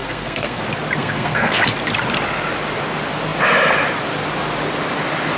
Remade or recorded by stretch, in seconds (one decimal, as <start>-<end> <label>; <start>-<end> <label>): 0.0-0.6 remade; 0.6-1.0 recorded; 1.0-1.6 remade; 1.6-5.4 recorded